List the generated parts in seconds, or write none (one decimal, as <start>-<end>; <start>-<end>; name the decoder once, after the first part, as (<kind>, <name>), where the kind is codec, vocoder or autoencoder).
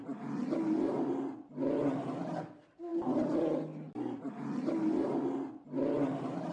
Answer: none